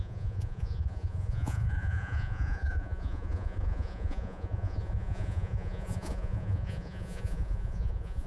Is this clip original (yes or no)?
no